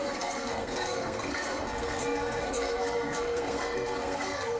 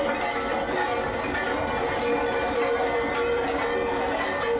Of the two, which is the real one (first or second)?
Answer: second